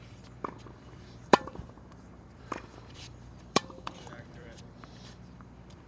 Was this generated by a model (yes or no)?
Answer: yes